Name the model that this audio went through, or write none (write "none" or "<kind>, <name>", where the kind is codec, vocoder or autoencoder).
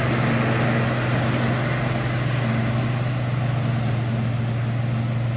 none